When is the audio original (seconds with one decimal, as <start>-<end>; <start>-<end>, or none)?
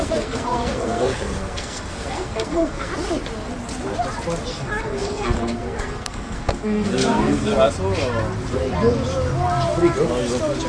2.9-4.5; 7.5-10.7